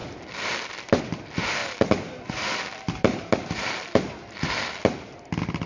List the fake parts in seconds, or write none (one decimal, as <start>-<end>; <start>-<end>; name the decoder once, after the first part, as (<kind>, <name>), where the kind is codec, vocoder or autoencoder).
1.0-1.6 (vocoder, BigVGAN v2); 2.3-5.7